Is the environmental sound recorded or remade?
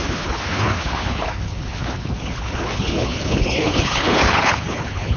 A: remade